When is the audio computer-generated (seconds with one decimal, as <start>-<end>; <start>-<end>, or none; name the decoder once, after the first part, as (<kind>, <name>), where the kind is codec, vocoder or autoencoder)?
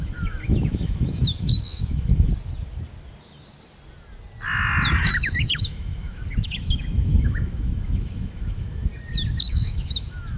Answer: 0.0-2.3 (autoencoder, DAC-VAE); 5.0-8.9; 9.5-10.4